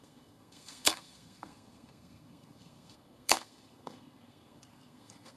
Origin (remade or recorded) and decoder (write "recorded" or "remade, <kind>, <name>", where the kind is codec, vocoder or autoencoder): remade, codec, SNAC